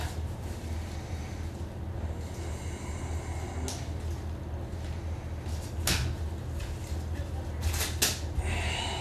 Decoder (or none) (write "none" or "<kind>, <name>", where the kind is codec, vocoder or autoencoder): none